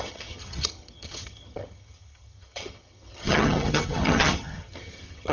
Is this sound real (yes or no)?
no